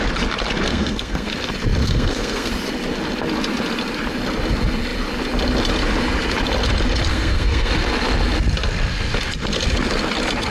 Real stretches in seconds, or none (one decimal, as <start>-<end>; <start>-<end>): 0.0-0.7; 1.3-1.8; 2.5-7.1; 7.7-10.5